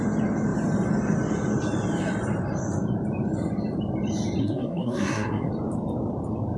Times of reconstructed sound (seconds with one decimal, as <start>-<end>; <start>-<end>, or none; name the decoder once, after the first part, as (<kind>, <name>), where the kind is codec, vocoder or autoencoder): 4.4-5.5 (codec, SNAC)